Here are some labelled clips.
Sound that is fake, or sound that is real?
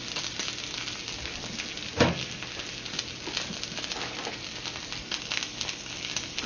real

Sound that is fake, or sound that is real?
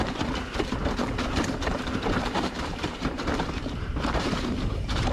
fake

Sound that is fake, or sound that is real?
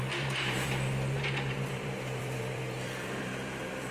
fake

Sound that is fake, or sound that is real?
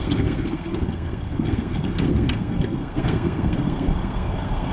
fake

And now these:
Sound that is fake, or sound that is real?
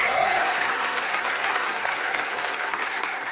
fake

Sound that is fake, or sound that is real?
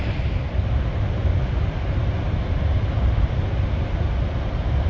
real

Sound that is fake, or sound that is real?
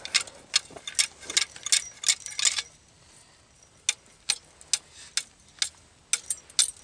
real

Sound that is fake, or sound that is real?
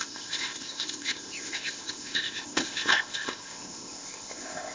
fake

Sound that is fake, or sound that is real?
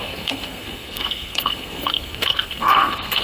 fake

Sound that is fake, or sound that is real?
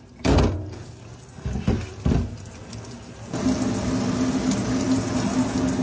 real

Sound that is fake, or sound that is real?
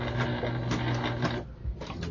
real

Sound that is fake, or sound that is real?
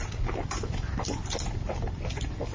real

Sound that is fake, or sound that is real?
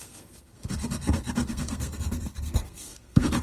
fake